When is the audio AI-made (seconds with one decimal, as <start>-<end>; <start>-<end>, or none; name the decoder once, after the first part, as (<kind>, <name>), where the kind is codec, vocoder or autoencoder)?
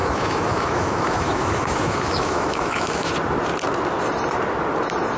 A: 0.0-3.1 (autoencoder, DAC-VAE)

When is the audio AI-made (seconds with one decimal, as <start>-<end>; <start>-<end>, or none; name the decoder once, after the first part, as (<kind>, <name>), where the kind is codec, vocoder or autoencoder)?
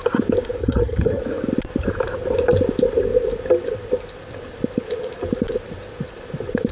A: 0.6-1.2 (vocoder, HiFi-GAN)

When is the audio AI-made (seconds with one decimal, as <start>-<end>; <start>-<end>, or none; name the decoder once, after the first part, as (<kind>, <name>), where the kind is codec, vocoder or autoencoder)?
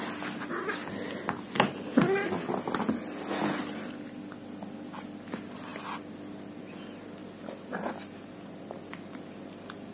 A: none